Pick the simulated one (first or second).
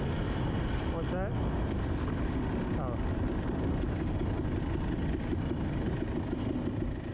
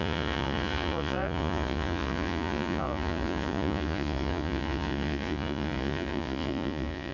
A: second